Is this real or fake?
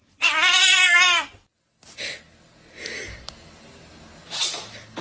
real